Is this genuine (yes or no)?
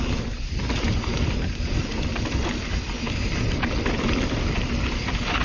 yes